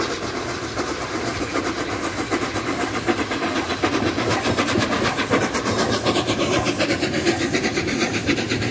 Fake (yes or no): no